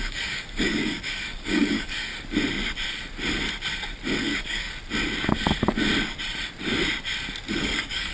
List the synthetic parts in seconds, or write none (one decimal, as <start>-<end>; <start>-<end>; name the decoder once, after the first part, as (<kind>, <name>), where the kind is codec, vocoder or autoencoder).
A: 0.0-2.1 (codec, DAC); 4.2-4.7; 7.5-8.1